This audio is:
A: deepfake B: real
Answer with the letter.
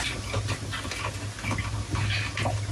B